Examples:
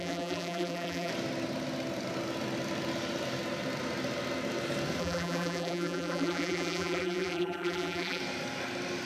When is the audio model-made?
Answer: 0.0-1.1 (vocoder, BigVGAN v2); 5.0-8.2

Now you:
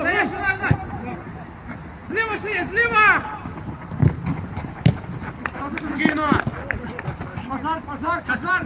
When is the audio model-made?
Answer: none

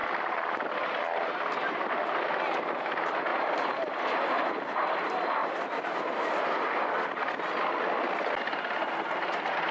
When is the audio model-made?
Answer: 0.0-2.2 (vocoder, BigVGAN v2)

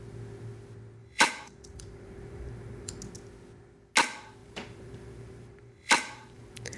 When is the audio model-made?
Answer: 1.0-2.9 (vocoder, BigVGAN v2); 4.4-6.8

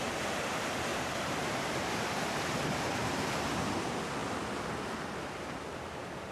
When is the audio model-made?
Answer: 0.9-3.6 (vocoder, BigVGAN v2)

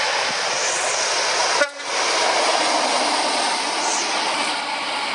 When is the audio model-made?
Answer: none

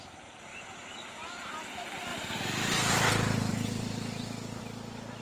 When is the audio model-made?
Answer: 0.5-1.5 (vocoder, BigVGAN v2); 2.1-3.1; 3.5-4.6